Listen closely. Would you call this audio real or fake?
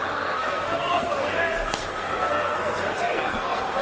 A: fake